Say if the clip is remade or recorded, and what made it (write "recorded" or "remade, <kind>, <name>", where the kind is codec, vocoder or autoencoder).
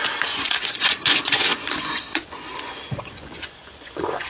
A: remade, vocoder, Vocos